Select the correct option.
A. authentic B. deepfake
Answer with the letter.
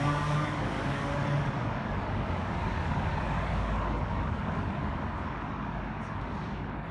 B